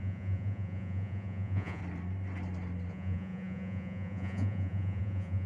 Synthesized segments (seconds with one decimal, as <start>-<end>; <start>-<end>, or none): 0.0-1.8; 2.9-5.5